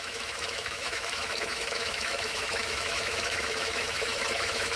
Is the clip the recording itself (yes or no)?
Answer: no